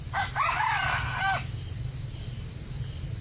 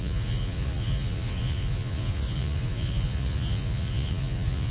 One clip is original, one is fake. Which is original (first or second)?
first